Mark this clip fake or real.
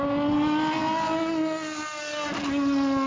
real